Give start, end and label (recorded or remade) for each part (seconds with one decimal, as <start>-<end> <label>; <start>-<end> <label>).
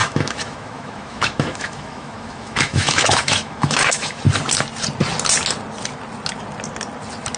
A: 0.0-4.2 remade; 4.2-7.4 recorded